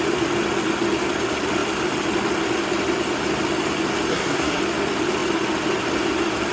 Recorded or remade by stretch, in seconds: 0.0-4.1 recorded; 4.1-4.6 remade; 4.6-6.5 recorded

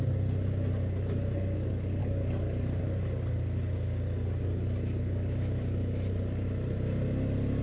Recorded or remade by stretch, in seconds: 0.0-2.0 recorded; 2.0-2.8 remade; 2.8-7.6 recorded